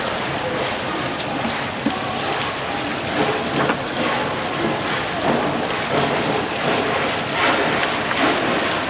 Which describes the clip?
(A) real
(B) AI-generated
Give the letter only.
A